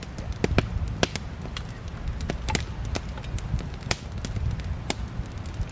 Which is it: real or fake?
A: real